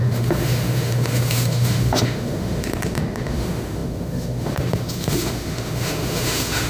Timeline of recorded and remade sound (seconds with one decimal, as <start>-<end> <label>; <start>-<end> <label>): 0.0-6.7 remade